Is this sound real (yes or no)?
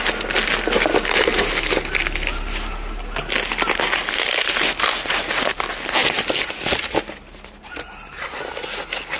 yes